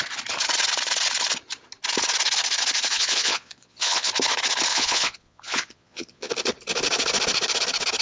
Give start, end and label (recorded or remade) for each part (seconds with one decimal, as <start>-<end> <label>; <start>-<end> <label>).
0.0-2.9 recorded; 2.9-4.1 remade; 4.1-4.7 recorded; 4.7-6.3 remade; 6.3-8.0 recorded

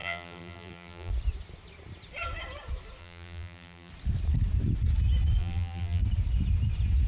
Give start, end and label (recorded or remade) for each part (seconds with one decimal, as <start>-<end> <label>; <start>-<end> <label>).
0.0-1.1 remade; 1.1-3.0 recorded; 3.0-3.9 remade; 3.9-5.4 recorded; 5.4-6.0 remade; 6.0-7.1 recorded

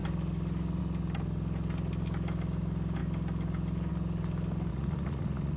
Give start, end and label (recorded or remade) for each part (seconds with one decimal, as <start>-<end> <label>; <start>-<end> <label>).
0.0-4.7 recorded; 4.7-5.6 remade

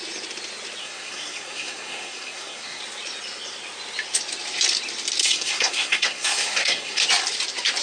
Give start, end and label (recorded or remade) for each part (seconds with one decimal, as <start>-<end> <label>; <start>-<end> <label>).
0.0-0.8 recorded; 0.8-2.8 remade; 2.8-5.2 recorded; 5.2-7.0 remade; 7.0-7.8 recorded

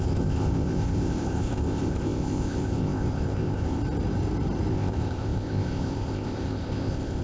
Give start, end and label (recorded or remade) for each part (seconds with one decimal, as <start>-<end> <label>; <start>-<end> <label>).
0.0-3.8 remade; 3.8-4.7 recorded; 4.7-7.2 remade

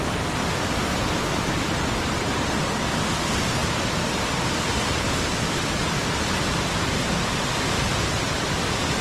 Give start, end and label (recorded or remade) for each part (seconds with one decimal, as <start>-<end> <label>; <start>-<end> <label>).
0.0-9.0 recorded

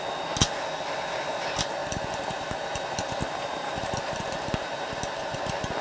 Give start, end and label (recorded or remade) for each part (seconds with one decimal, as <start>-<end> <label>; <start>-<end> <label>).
0.0-1.8 recorded; 1.8-5.2 remade; 5.2-5.8 recorded